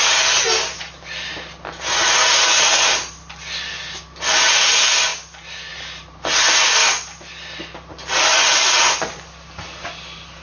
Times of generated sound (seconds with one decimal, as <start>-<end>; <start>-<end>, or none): none